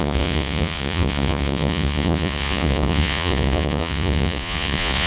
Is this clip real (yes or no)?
no